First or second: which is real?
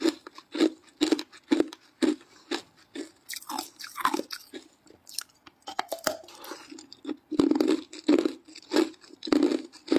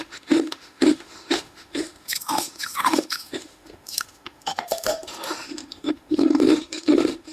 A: first